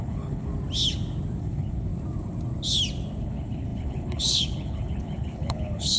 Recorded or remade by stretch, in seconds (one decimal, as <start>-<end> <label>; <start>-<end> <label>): 0.0-0.5 remade; 0.5-1.4 recorded; 1.4-1.9 remade; 1.9-3.2 recorded; 3.2-6.0 remade